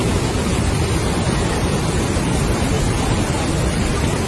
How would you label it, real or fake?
real